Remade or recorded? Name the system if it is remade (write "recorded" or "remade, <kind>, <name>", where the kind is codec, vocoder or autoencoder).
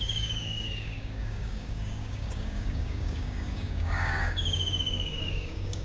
remade, codec, DAC